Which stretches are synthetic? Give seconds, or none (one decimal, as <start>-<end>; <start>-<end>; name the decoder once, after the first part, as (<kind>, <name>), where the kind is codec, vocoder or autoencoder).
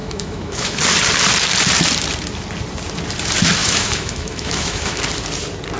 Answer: 0.0-0.8 (autoencoder, DAC-VAE); 3.6-5.0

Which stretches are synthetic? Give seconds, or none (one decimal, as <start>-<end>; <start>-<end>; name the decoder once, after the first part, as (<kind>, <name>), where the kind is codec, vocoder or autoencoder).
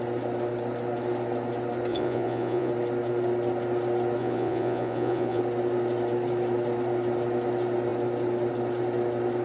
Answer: 1.9-2.7 (vocoder, Vocos); 4.2-5.4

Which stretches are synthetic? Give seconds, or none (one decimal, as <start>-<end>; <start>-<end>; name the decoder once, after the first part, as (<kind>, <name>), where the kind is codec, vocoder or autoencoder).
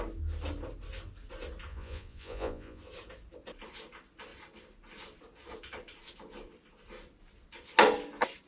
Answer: 1.7-2.8 (vocoder, Vocos)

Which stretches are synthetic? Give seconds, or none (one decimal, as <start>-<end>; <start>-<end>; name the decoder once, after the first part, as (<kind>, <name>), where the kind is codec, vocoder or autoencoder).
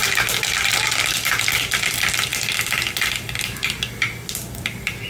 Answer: none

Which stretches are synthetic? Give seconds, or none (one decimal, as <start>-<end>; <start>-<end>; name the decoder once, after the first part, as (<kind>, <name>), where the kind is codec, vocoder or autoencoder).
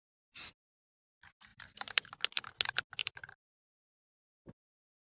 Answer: 1.5-2.1 (vocoder, BigVGAN v2); 3.0-3.8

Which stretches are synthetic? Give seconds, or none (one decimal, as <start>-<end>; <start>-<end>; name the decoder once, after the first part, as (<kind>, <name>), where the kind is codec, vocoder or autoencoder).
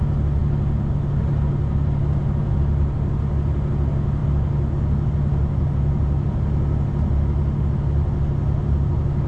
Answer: none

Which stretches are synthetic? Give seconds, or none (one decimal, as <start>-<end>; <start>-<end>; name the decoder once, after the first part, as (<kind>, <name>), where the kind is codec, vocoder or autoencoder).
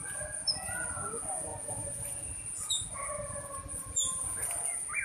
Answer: 1.5-4.5 (vocoder, Vocos)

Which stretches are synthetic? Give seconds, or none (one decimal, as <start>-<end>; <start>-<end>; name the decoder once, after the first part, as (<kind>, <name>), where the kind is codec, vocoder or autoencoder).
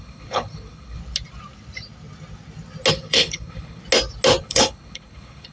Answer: 0.0-1.0 (codec, HILCodec); 2.9-3.8; 4.4-5.5